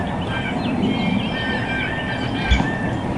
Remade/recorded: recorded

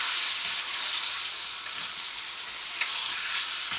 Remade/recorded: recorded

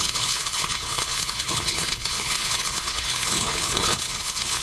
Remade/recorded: remade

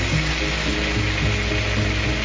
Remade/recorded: recorded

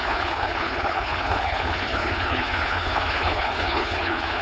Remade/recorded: remade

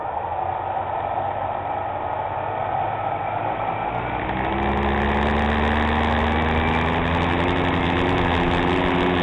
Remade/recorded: recorded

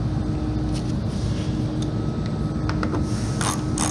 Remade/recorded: recorded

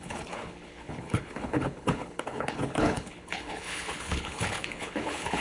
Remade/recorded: remade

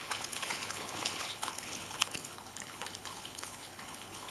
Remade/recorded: remade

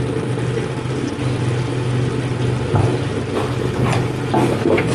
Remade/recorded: recorded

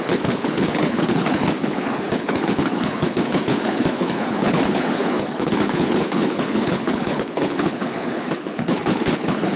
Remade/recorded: remade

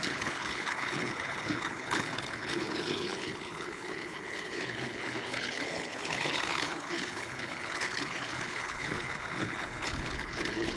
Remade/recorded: remade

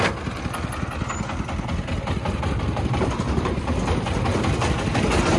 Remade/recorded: recorded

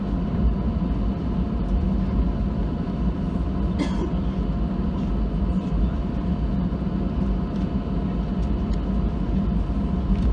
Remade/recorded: recorded